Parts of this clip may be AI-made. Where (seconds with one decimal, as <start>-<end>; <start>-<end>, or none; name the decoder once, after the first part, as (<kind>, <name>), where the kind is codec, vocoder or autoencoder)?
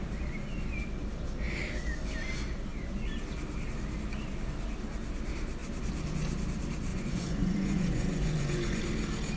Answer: 6.9-8.8 (vocoder, Vocos)